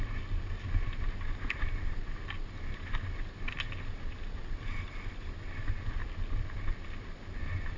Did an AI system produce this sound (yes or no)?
no